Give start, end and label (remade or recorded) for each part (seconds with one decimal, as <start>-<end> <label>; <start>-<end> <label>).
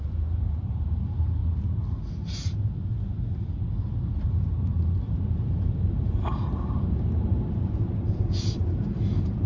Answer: 0.0-1.4 remade; 1.4-4.0 recorded; 4.0-9.5 remade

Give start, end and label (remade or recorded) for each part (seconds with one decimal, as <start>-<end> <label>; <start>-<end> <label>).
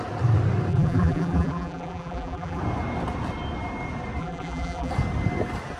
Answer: 0.0-0.7 recorded; 0.7-2.6 remade; 2.6-4.2 recorded; 4.2-4.9 remade; 4.9-5.8 recorded